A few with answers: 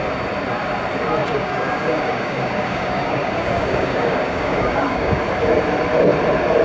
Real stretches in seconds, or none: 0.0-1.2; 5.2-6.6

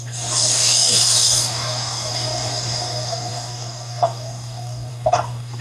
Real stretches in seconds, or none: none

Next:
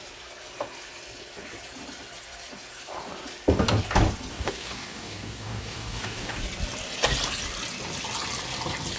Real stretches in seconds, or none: 0.0-4.3; 6.4-9.0

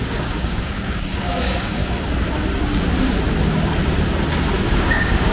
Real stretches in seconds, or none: 1.8-4.7